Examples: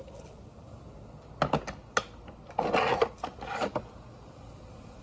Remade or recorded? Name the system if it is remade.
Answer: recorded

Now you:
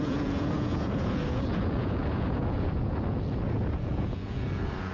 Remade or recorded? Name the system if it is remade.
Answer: remade, vocoder, Vocos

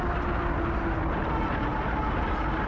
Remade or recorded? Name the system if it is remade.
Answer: recorded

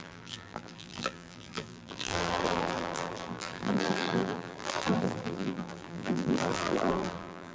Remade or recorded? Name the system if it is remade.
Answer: remade, vocoder, BigVGAN v2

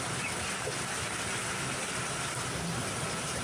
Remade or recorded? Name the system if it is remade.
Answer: recorded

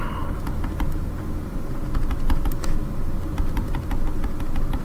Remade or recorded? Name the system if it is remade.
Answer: recorded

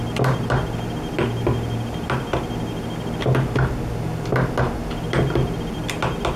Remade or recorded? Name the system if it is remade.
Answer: recorded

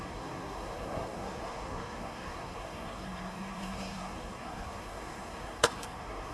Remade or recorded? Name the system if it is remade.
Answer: remade, codec, SNAC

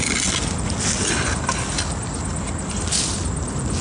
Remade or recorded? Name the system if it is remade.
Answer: recorded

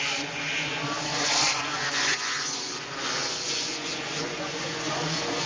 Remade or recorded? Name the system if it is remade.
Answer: remade, vocoder, Vocos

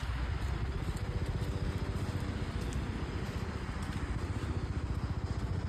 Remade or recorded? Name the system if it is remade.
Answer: recorded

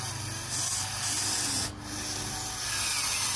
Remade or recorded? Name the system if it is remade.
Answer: recorded